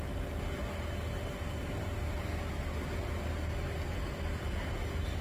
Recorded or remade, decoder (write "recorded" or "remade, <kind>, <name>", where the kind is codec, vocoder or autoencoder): recorded